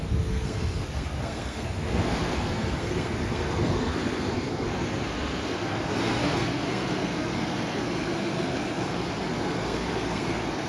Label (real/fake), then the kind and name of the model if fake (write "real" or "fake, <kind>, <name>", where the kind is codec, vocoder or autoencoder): fake, codec, SNAC